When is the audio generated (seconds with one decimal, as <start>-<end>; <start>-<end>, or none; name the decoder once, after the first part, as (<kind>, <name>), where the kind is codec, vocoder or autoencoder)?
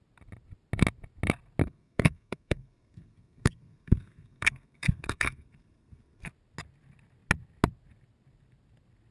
1.6-6.3 (codec, SNAC)